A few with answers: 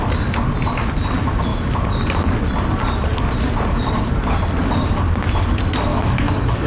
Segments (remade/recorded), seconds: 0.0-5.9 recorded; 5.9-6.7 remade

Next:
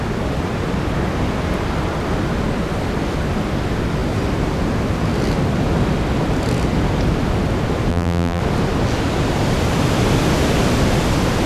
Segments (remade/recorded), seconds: 0.0-7.9 recorded; 7.9-8.4 remade; 8.4-11.5 recorded

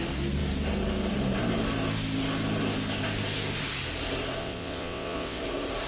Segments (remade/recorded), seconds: 0.0-4.4 recorded; 4.4-5.4 remade; 5.4-5.9 recorded

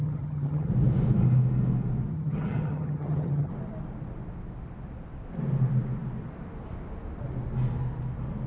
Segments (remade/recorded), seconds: 0.0-0.7 remade; 0.7-2.1 recorded; 2.1-3.5 remade; 3.5-8.5 recorded

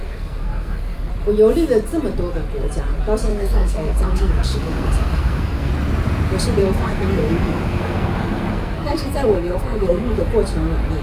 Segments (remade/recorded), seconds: 0.0-1.1 remade; 1.1-3.3 recorded; 3.3-5.7 remade; 5.7-6.6 recorded; 6.6-10.2 remade; 10.2-11.0 recorded